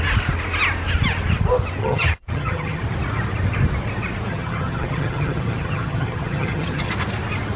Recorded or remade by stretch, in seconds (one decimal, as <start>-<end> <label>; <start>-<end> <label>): 0.0-1.8 recorded; 1.8-2.8 remade; 2.8-4.3 recorded; 4.3-6.9 remade; 6.9-7.6 recorded